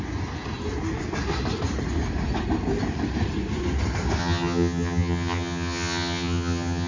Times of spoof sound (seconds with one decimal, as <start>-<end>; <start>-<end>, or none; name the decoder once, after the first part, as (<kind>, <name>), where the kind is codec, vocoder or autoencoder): 4.2-6.9 (vocoder, HiFi-GAN)